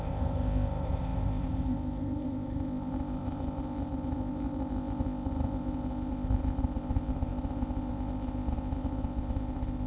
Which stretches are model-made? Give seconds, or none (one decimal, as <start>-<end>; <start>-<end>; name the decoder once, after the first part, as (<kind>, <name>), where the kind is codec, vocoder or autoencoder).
0.0-9.9 (codec, ZipCodec)